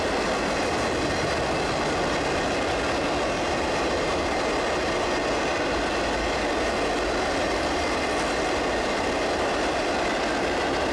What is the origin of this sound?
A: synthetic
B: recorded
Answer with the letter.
B